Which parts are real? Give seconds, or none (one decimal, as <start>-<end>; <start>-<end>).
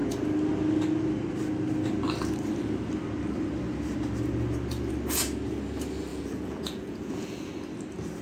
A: 0.0-6.1; 7.5-8.2